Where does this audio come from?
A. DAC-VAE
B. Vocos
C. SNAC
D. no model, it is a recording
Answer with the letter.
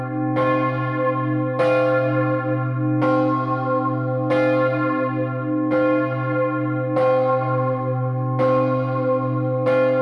D